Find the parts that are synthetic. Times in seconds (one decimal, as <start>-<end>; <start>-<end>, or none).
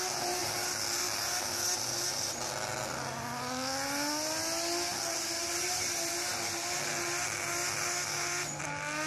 none